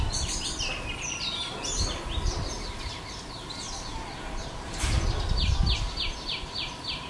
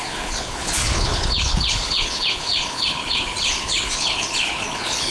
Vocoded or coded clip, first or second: second